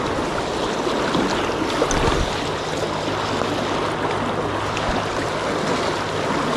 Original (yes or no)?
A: yes